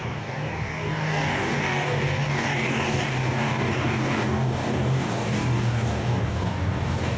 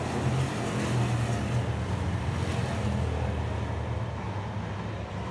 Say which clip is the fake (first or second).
first